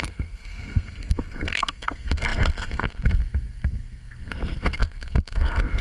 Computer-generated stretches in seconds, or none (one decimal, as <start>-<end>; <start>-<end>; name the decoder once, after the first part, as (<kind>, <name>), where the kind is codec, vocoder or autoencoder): 0.0-5.8 (codec, SNAC)